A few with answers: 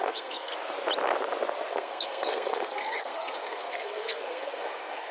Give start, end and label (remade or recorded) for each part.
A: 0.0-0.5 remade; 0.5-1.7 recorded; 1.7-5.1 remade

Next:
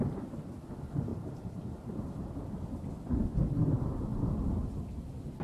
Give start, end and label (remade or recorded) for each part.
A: 0.0-1.1 recorded; 1.1-2.6 remade; 2.6-4.1 recorded; 4.1-4.9 remade; 4.9-5.4 recorded

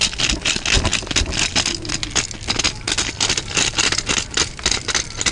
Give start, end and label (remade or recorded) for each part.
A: 0.0-5.3 recorded

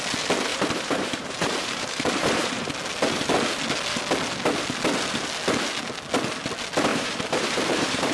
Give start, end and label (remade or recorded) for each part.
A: 0.0-0.5 recorded; 0.5-2.7 remade; 2.7-6.9 recorded; 6.9-8.1 remade

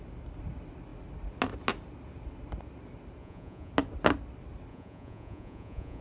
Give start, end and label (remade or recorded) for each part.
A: 0.0-3.2 recorded; 3.2-3.7 remade; 3.7-4.7 recorded; 4.7-6.0 remade